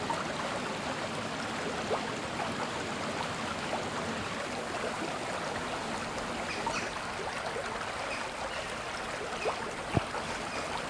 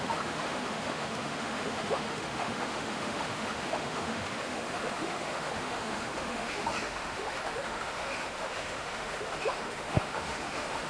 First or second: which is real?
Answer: first